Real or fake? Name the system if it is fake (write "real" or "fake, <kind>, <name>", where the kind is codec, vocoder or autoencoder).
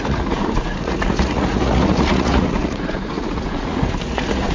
fake, vocoder, Vocos